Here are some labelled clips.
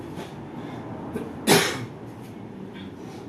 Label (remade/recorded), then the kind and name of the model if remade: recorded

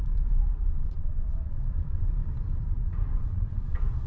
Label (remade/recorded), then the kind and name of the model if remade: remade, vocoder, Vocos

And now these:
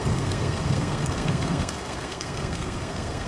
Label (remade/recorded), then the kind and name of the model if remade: remade, codec, SNAC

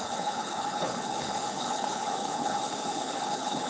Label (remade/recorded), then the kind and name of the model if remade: remade, codec, HILCodec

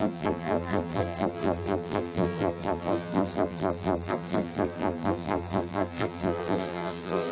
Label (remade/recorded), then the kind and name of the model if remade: remade, vocoder, BigVGAN v2